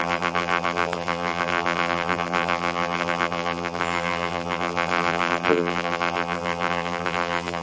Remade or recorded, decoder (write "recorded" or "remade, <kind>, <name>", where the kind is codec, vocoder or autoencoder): remade, vocoder, BigVGAN v2